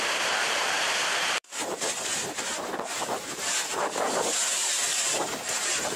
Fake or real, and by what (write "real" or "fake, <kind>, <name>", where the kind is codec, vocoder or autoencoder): fake, vocoder, BigVGAN v2